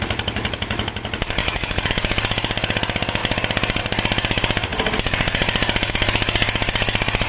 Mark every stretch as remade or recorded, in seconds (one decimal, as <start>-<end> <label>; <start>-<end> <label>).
0.0-1.4 recorded; 1.4-1.9 remade; 1.9-7.3 recorded